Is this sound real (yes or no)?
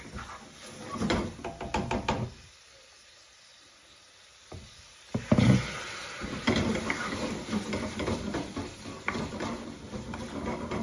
yes